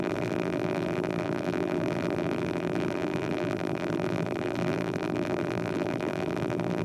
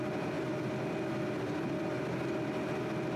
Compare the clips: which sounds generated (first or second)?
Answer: first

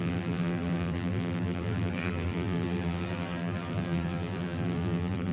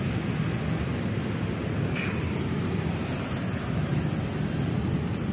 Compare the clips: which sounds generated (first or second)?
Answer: first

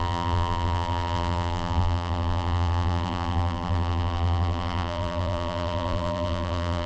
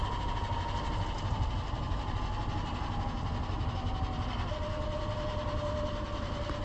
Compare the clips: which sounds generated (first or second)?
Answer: first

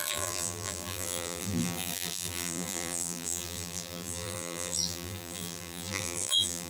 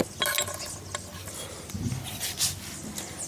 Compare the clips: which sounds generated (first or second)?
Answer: first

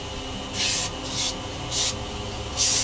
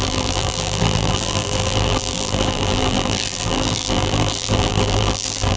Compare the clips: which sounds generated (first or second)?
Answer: second